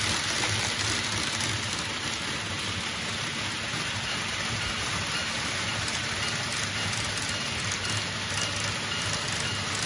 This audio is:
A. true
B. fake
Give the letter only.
A